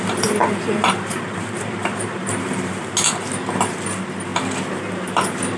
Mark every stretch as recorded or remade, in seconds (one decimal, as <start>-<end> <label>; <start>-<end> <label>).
0.0-0.4 recorded; 0.4-2.8 remade; 2.8-5.6 recorded